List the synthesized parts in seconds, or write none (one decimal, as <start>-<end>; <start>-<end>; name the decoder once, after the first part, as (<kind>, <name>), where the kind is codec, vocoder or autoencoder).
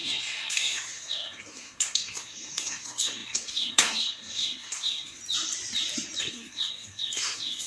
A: 0.0-5.2 (codec, SNAC); 6.2-7.7